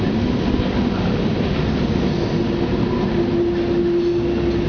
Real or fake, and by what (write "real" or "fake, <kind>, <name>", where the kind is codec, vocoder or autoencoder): real